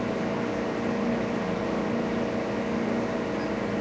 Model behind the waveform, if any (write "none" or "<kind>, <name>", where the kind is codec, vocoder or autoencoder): none